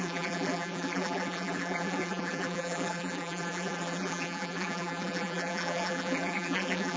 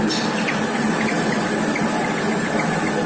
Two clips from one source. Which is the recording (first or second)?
second